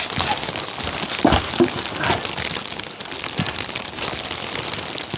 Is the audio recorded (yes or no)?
yes